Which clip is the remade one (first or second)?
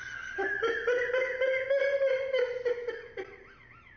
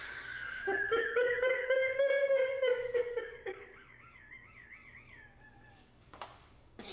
second